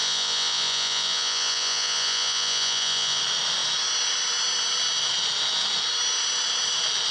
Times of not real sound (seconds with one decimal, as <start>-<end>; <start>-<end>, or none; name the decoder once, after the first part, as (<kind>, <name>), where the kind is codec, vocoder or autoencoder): 0.0-3.2 (vocoder, Vocos)